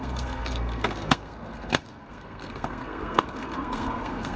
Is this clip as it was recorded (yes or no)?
no